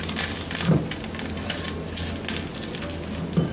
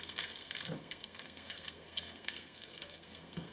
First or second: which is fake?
second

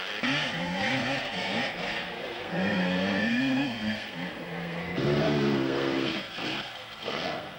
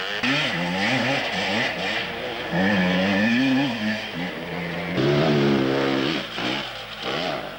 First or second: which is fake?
first